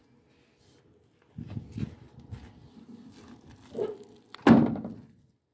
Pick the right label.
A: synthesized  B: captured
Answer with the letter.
B